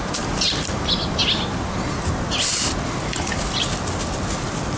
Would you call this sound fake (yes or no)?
no